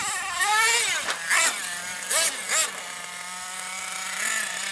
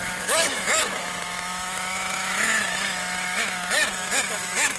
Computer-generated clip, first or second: second